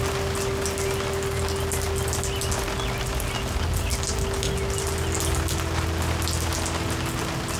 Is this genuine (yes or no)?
yes